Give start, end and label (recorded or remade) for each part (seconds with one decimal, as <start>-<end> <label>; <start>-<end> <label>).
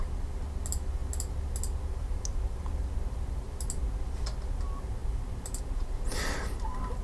0.0-7.0 recorded